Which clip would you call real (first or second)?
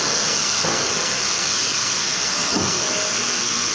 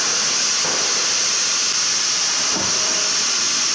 second